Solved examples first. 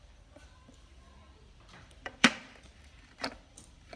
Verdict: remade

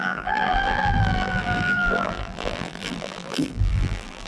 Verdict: remade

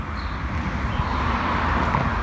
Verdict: recorded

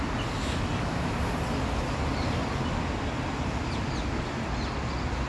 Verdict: recorded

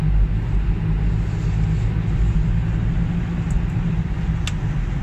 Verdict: recorded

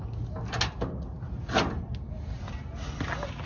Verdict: recorded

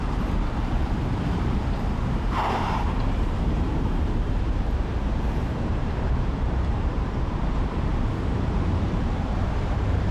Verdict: remade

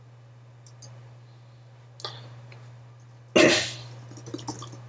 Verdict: recorded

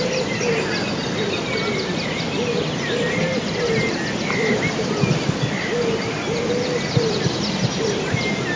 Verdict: recorded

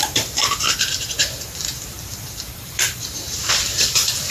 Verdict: remade